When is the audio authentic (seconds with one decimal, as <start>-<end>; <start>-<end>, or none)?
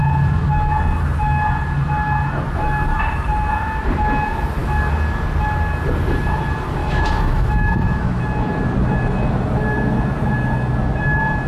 0.0-6.8; 8.2-11.5